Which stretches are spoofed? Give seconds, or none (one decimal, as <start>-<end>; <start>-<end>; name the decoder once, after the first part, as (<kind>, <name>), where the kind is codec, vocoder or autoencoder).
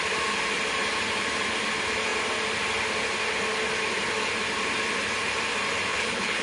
5.9-6.4 (codec, HILCodec)